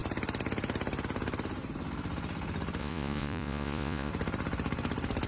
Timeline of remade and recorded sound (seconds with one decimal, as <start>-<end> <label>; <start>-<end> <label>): 0.0-2.8 recorded; 2.8-4.1 remade; 4.1-5.3 recorded